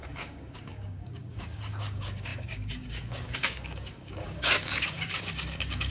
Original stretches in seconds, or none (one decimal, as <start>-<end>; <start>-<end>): none